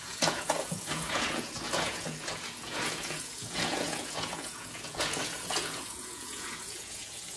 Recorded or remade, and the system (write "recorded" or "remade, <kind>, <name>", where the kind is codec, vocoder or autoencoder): remade, vocoder, Vocos